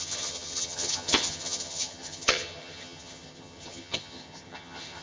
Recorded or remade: remade